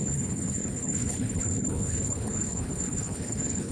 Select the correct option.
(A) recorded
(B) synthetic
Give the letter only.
B